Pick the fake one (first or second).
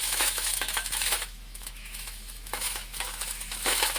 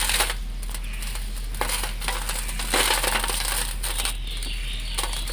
first